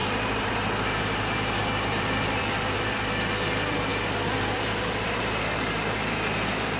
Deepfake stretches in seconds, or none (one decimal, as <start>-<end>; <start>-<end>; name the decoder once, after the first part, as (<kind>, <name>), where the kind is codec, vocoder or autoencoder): 0.0-0.5 (vocoder, BigVGAN v2); 1.6-3.3; 3.9-5.2

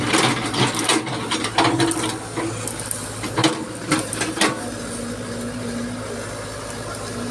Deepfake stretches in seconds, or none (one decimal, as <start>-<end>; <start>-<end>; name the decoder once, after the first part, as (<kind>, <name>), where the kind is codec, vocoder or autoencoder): none